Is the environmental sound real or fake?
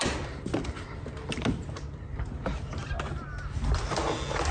real